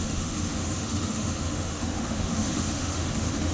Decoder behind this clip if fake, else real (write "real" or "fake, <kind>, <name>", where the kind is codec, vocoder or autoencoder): fake, autoencoder, DAC-VAE